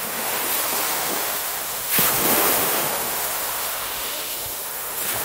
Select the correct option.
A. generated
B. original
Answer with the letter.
A